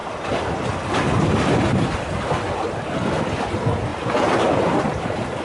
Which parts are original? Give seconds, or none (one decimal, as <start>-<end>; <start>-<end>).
0.0-5.4

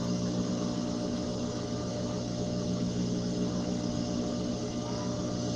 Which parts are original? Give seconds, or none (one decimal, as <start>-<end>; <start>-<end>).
0.0-0.5

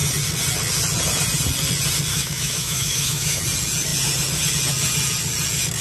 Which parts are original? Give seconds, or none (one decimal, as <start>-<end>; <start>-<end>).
0.0-2.1; 3.4-5.8

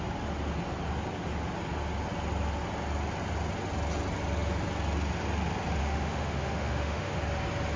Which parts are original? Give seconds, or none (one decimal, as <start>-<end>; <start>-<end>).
0.0-5.8; 7.2-7.8

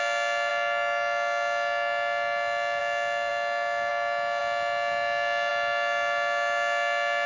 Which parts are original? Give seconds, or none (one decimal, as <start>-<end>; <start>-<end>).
0.0-7.3

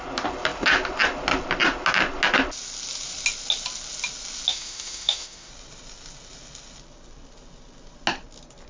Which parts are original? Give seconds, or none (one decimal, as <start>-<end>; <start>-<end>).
0.0-4.5; 5.5-8.7

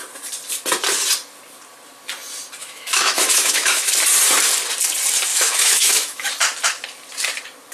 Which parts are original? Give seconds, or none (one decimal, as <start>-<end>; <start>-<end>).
0.0-2.6; 3.9-5.3; 6.3-7.7